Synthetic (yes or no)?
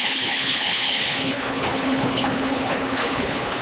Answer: yes